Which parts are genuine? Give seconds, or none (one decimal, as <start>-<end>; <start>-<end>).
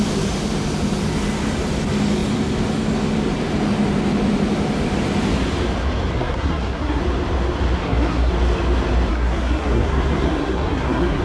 0.0-6.1; 7.0-7.8; 8.3-9.1